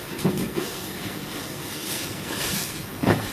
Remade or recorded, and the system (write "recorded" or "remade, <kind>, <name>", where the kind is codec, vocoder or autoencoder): remade, codec, SNAC